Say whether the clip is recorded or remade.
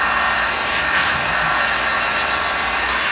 recorded